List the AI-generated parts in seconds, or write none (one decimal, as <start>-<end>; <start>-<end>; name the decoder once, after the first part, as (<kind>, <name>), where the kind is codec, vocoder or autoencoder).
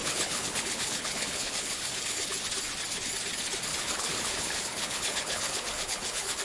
0.0-2.3 (codec, HILCodec); 3.7-6.4